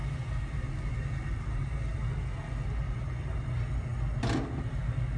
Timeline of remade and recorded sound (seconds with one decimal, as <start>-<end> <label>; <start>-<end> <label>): 0.0-5.2 recorded